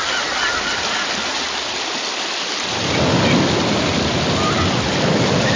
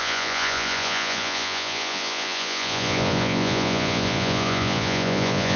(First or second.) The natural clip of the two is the first